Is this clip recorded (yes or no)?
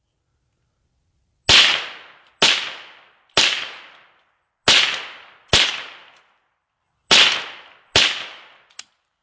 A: yes